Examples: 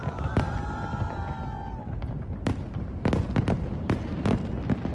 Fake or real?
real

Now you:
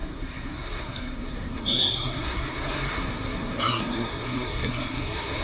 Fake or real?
fake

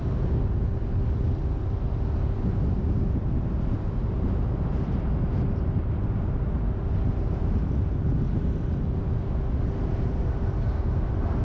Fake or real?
real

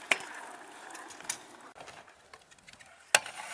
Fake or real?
real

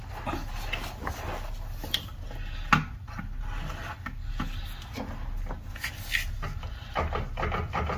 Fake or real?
real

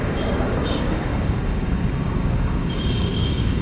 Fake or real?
fake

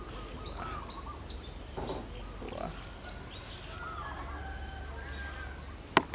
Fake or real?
real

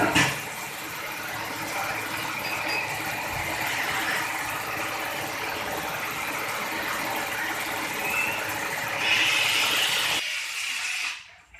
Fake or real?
real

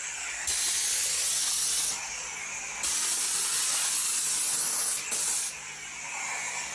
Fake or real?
real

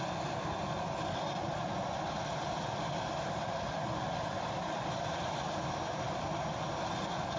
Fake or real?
real